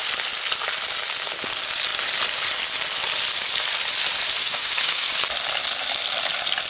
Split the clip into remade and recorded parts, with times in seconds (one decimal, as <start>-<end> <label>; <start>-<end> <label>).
0.0-4.4 recorded; 4.4-5.1 remade; 5.1-6.7 recorded